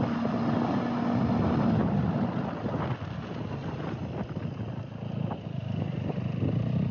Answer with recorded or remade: recorded